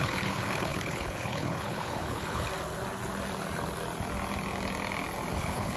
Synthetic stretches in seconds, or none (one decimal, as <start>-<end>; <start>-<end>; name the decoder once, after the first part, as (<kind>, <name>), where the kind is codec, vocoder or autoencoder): 0.0-2.5 (codec, HILCodec); 5.3-5.8